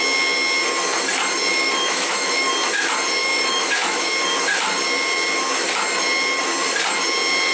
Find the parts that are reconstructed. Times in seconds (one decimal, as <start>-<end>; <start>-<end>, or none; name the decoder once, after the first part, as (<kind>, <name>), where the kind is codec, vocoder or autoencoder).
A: 1.5-2.5 (autoencoder, DAC-VAE); 3.2-4.1